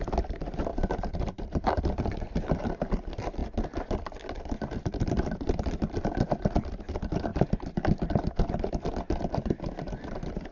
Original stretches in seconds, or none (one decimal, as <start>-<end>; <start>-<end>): 0.0-0.7; 1.8-10.5